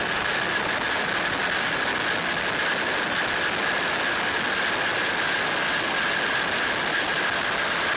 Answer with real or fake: real